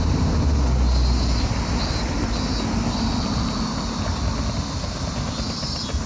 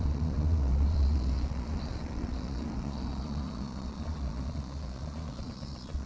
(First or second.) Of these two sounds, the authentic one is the first